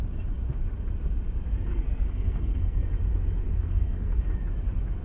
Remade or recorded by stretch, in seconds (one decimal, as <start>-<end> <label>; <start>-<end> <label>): 0.0-1.7 recorded; 1.7-2.9 remade; 2.9-3.4 recorded; 3.4-4.2 remade; 4.2-5.0 recorded